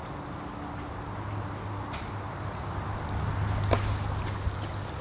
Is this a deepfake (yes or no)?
no